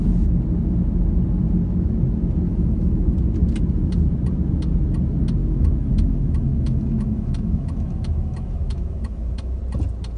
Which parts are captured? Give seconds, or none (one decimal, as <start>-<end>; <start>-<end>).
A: 0.0-2.5; 3.1-5.4; 9.6-10.2